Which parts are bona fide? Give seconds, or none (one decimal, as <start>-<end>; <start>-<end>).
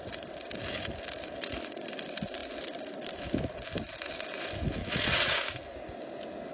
0.0-1.4; 1.9-4.8; 5.6-6.5